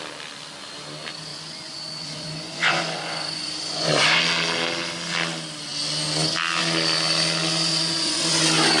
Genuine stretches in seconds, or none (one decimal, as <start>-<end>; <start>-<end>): 0.0-1.3; 4.2-7.7

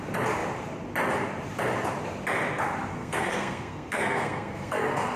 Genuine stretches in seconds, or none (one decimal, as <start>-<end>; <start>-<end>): 0.0-2.9

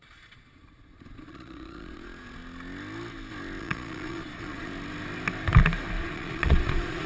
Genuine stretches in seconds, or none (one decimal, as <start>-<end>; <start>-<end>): 2.4-3.6; 4.7-6.0

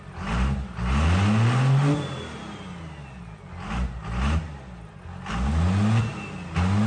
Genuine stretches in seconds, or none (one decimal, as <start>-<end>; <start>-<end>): 0.0-6.9

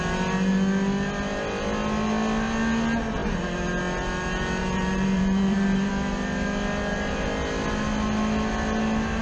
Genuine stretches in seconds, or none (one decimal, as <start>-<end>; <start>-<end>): 0.0-4.6; 5.9-9.2

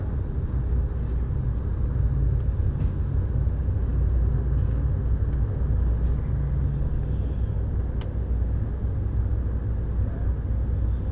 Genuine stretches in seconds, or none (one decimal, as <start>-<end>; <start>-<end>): 0.0-11.1

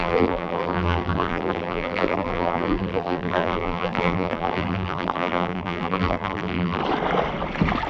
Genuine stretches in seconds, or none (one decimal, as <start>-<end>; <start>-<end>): 6.8-7.9

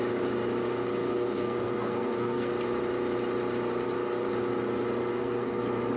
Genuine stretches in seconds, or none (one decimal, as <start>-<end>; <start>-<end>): 0.0-1.0; 2.5-5.1; 5.6-6.0